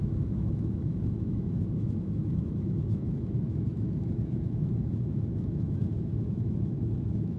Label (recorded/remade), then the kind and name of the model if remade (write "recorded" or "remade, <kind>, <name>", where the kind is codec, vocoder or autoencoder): remade, autoencoder, DAC-VAE